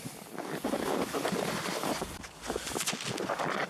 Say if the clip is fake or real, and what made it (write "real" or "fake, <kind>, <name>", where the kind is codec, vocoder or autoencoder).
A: real